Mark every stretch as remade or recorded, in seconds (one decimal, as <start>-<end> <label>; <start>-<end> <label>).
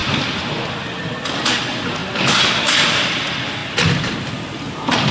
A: 0.0-0.7 recorded; 0.7-2.0 remade; 2.0-2.6 recorded; 2.6-3.6 remade; 3.6-4.2 recorded; 4.2-5.1 remade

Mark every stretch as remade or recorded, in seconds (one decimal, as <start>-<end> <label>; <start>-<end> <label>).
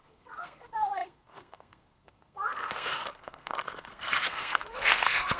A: 0.0-5.4 remade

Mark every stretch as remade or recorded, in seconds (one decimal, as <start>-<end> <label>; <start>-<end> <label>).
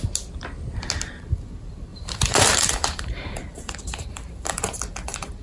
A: 0.0-1.9 recorded; 1.9-5.4 remade